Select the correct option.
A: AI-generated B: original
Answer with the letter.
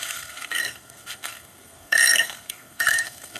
A